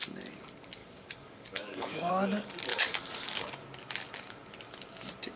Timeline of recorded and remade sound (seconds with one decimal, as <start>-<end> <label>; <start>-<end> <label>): 0.0-0.8 recorded; 0.8-2.1 remade; 2.1-2.7 recorded; 2.7-3.5 remade; 3.5-5.4 recorded